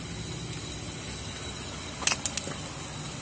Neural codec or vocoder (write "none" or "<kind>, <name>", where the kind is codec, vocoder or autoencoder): none